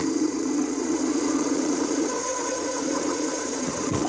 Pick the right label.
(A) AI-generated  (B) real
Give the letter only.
A